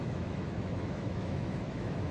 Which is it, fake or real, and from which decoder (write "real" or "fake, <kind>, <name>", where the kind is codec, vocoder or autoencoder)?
fake, autoencoder, DAC-VAE